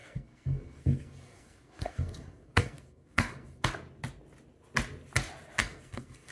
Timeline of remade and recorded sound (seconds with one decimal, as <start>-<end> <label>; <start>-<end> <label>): 0.0-3.7 remade; 3.7-5.6 recorded; 5.6-6.3 remade